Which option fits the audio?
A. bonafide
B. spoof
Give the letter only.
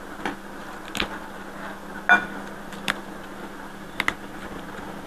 A